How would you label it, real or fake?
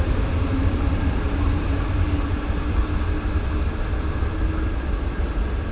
real